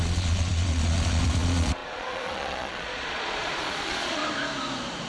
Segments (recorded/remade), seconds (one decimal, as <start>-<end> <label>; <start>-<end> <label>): 0.0-4.2 remade; 4.2-5.1 recorded